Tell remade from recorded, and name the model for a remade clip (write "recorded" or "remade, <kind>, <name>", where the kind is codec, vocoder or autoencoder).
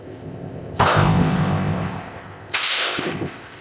remade, codec, ZipCodec